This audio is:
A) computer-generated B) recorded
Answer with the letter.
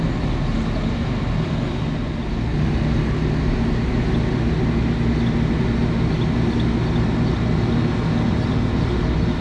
B